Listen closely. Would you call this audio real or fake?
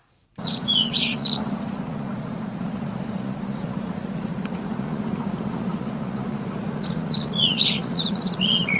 fake